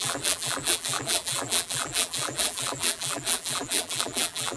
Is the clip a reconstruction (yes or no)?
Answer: yes